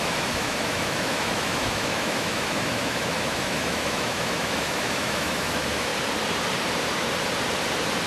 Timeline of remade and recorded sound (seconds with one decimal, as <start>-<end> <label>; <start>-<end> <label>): 0.0-5.9 remade; 5.9-8.1 recorded